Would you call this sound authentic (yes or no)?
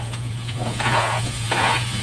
no